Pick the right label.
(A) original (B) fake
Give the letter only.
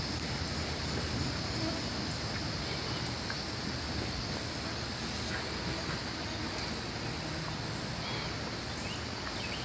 A